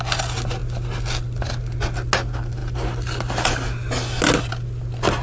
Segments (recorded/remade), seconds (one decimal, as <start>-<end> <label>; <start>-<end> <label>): 0.0-5.2 recorded